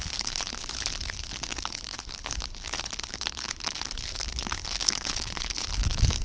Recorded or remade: remade